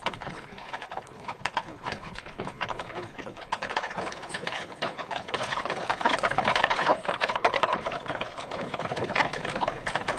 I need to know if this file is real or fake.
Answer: fake